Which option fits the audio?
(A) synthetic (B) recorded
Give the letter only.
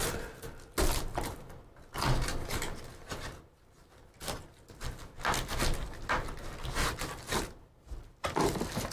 B